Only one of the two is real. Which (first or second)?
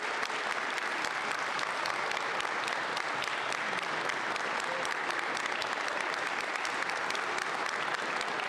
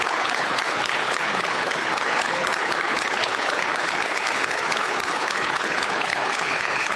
first